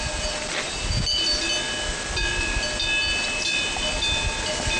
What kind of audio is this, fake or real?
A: real